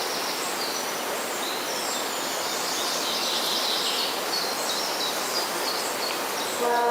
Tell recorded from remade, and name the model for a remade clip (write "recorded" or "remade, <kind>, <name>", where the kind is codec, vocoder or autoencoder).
recorded